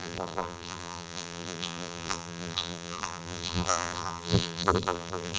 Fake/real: fake